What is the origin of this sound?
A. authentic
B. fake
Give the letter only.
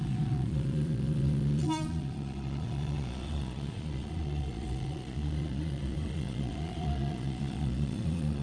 B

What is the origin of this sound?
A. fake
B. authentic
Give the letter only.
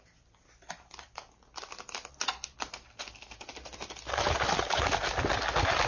B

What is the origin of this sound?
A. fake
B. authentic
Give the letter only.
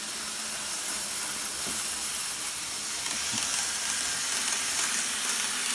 B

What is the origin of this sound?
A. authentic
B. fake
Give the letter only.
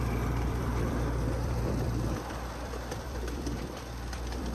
B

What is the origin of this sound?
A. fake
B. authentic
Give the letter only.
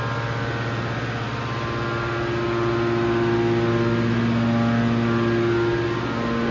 B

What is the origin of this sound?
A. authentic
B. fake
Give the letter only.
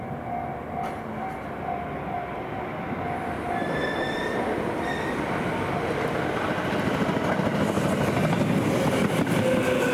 A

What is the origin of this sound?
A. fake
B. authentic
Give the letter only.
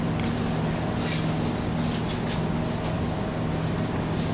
B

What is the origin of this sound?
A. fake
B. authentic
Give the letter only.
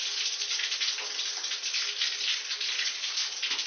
B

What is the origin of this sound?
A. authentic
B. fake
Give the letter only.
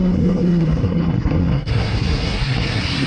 B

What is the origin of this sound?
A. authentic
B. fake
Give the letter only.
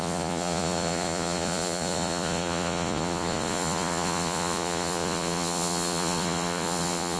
B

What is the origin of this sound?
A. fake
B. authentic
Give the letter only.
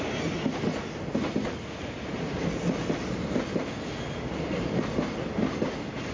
B